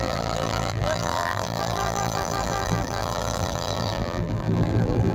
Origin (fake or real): fake